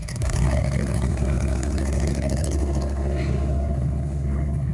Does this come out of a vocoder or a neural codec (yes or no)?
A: yes